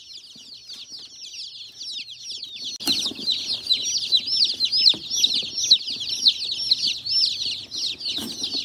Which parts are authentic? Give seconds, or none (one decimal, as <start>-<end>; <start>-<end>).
0.0-8.6